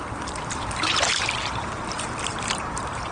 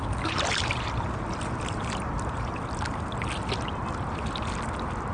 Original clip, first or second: second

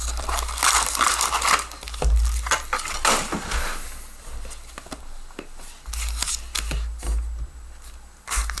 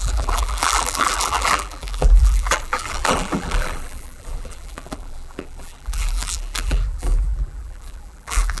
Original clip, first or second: first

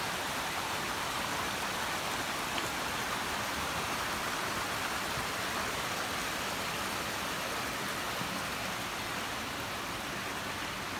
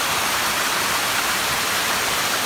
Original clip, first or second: first